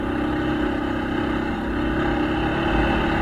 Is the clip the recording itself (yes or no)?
yes